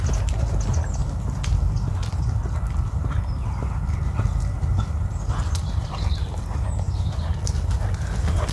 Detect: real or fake real